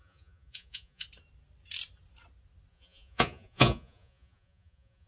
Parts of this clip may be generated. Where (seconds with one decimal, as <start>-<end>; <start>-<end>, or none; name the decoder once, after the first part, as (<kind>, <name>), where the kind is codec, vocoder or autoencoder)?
0.0-1.0 (vocoder, Vocos); 2.7-5.1